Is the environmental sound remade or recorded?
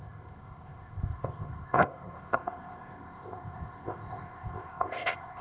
remade